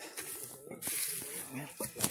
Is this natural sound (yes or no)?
yes